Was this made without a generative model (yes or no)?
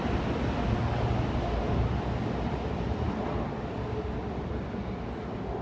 yes